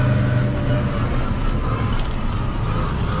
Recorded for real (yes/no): yes